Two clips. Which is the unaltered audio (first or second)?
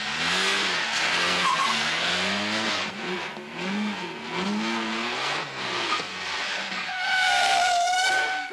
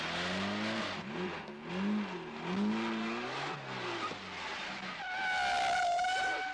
second